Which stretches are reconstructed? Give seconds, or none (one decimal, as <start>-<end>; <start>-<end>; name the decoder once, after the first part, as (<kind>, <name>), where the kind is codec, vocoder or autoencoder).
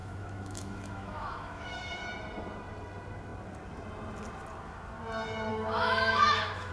0.0-2.0 (autoencoder, DAC-VAE); 5.5-6.7